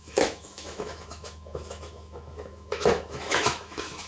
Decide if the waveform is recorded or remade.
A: remade